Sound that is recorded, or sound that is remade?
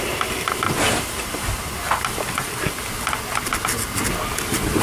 recorded